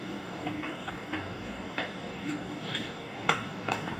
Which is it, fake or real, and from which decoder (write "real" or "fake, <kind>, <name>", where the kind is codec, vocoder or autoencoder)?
fake, codec, DAC